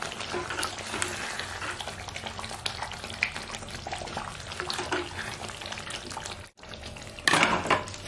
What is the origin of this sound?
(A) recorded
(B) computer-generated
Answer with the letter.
A